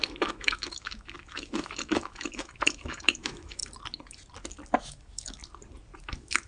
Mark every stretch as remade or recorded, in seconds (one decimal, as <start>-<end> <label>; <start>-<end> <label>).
0.0-3.6 remade; 3.6-4.8 recorded; 4.8-5.4 remade; 5.4-6.0 recorded; 6.0-6.5 remade